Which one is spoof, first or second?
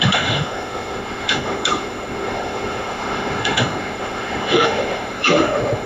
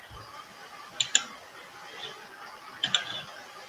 first